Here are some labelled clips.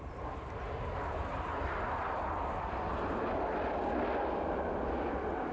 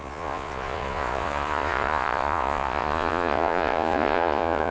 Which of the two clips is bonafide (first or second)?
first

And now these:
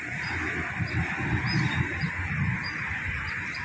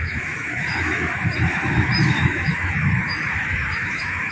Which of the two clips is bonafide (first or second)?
first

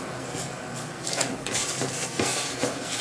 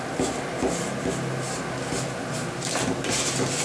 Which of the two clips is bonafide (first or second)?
second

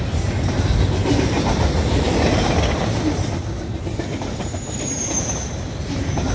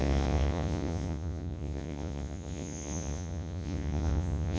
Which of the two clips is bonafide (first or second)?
first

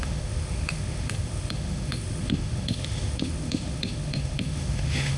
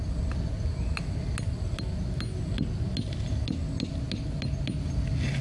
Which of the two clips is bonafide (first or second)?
second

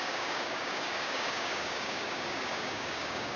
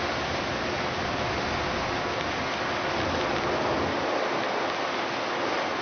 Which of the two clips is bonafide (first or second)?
second